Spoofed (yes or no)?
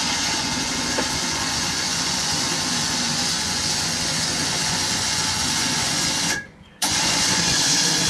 yes